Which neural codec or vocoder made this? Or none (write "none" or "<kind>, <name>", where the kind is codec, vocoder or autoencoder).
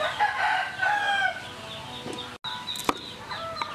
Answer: none